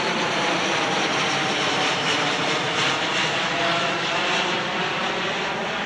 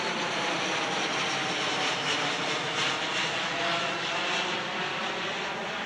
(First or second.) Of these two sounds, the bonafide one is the second